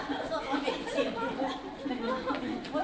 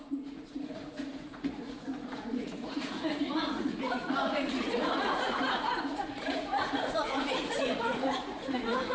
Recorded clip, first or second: first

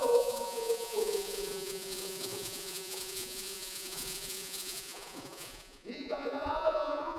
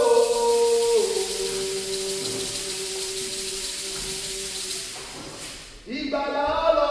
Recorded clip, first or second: second